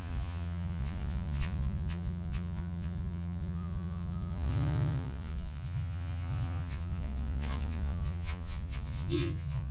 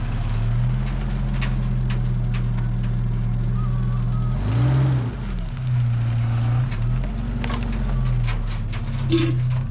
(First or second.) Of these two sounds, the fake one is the first